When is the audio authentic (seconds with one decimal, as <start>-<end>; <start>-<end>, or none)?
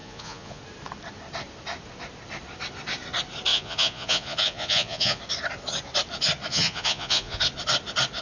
0.6-3.5; 5.2-6.5; 7.4-8.2